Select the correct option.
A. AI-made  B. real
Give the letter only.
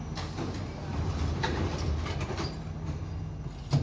B